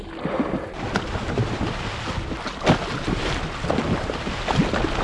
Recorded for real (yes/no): yes